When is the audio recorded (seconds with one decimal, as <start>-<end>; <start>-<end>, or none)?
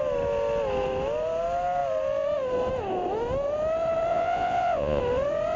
0.0-4.1; 5.0-5.6